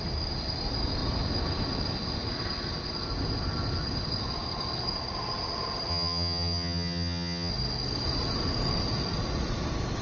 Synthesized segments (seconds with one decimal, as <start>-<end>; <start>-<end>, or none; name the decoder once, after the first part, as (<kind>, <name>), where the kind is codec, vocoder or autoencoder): 5.9-7.5 (vocoder, HiFi-GAN)

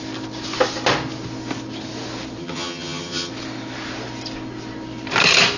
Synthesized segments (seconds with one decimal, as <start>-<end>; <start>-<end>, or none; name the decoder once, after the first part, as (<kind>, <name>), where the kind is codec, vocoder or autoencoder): 2.4-3.3 (vocoder, HiFi-GAN)

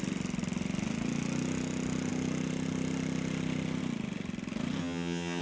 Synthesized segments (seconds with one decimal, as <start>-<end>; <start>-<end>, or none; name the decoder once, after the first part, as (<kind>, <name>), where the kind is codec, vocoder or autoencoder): 4.8-5.4 (vocoder, HiFi-GAN)